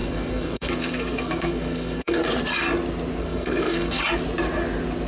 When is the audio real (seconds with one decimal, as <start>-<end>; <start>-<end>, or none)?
2.2-3.2; 4.0-5.1

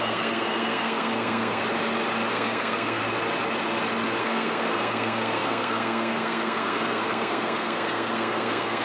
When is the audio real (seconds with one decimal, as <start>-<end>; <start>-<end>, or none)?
1.6-2.3; 3.0-4.2